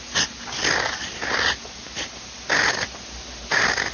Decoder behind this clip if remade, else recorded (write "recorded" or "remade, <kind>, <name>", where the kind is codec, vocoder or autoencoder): recorded